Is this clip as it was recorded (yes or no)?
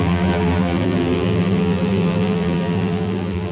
no